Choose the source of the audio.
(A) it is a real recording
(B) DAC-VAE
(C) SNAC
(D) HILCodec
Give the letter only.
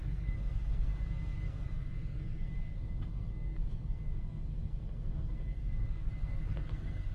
C